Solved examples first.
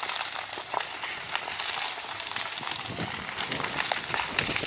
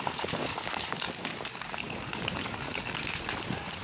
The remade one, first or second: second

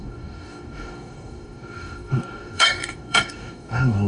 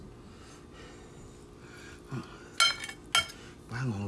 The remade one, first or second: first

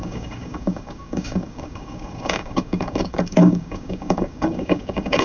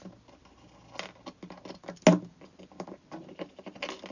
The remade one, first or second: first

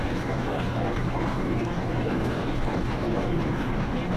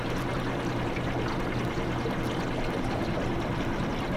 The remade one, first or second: first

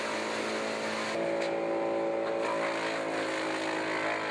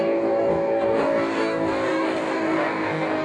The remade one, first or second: second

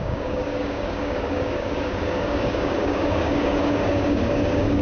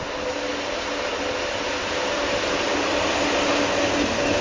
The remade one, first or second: first